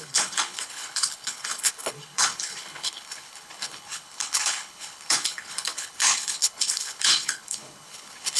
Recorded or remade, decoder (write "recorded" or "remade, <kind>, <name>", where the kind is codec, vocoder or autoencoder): remade, codec, HILCodec